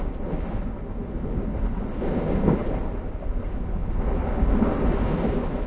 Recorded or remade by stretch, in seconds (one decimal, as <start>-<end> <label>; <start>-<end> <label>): 0.0-5.7 recorded

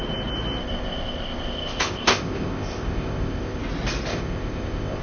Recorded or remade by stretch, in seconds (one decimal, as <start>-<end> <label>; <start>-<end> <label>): 0.0-0.6 recorded; 0.6-3.6 remade; 3.6-4.1 recorded; 4.1-5.0 remade